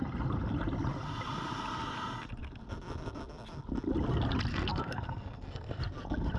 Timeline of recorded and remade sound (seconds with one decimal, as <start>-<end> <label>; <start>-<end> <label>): 0.0-4.5 recorded; 4.5-5.8 remade; 5.8-6.4 recorded